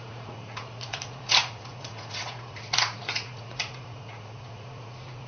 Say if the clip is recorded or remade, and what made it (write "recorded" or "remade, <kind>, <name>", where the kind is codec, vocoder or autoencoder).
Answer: remade, vocoder, Vocos